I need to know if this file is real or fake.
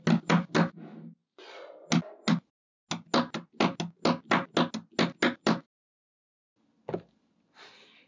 real